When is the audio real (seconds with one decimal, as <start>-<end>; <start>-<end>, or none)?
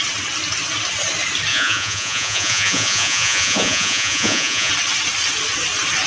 0.0-1.5; 4.7-6.1